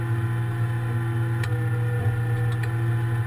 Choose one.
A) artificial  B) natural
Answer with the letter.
B